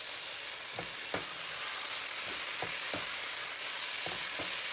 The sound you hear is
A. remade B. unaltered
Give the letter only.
B